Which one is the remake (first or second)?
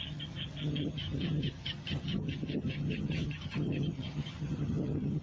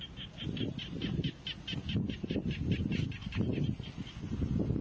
first